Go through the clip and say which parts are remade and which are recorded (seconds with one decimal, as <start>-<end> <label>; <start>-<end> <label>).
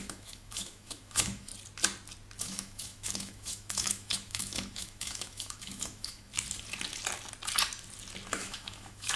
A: 0.0-1.5 remade; 1.5-2.4 recorded; 2.4-6.3 remade; 6.3-8.3 recorded; 8.3-9.2 remade